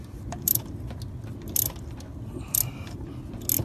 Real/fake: real